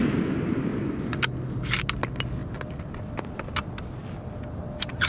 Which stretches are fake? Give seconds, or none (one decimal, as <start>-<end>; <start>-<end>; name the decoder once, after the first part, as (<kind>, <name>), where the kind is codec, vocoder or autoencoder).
0.7-1.2 (vocoder, Vocos)